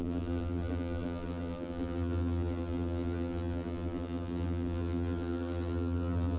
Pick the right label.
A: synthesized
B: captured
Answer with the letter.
A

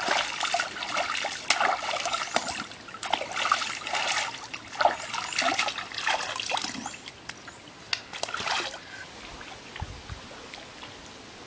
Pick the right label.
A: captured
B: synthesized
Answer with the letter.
A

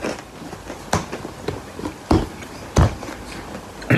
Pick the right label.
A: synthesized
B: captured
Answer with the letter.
B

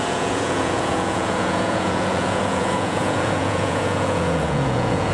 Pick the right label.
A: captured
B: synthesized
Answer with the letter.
B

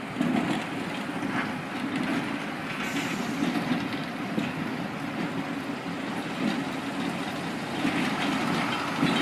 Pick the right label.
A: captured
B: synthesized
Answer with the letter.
A